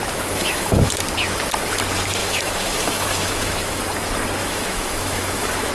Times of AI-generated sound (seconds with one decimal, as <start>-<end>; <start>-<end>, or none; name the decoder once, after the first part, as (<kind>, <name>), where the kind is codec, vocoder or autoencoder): 0.0-0.9 (autoencoder, DAC-VAE); 2.2-3.8; 4.4-5.7